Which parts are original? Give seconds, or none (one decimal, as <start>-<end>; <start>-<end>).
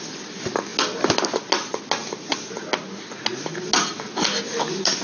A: 0.0-5.0